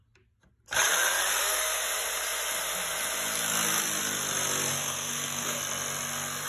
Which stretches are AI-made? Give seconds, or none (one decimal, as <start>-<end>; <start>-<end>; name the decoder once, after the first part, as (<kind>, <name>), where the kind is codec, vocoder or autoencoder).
1.3-1.8 (codec, SNAC); 4.7-5.6